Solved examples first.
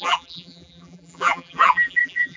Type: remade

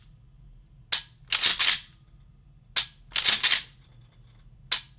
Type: recorded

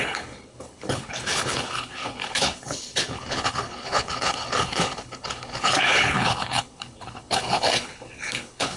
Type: remade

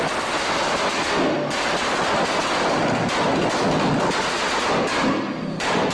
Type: recorded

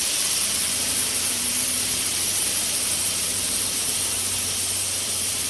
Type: remade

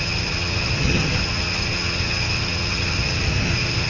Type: remade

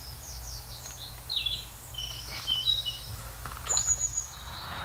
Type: remade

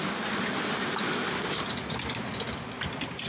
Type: recorded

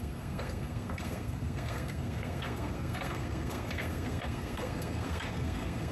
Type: remade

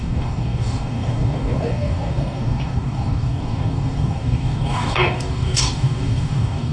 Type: remade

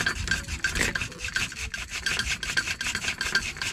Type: recorded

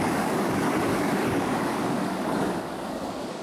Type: remade